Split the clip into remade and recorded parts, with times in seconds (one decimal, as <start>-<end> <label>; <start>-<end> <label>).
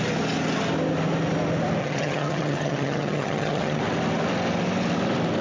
0.0-1.8 recorded; 1.8-3.8 remade; 3.8-5.4 recorded